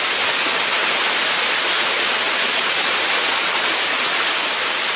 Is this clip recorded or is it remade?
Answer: recorded